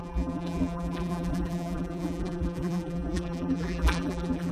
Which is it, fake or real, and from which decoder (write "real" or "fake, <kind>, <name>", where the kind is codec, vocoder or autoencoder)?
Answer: fake, vocoder, BigVGAN v2